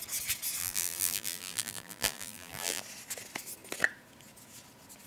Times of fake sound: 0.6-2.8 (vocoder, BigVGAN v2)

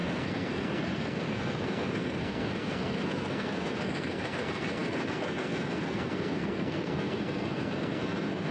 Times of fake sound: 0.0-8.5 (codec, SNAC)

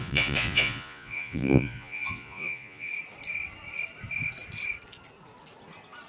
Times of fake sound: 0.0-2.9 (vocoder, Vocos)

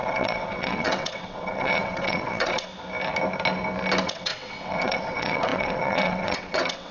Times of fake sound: 0.0-2.7 (vocoder, WaveNeXt); 4.0-6.9